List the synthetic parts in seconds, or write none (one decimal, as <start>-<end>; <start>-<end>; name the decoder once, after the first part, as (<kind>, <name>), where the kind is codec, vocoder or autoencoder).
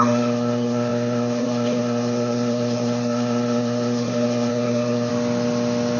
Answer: 0.0-5.1 (codec, SNAC)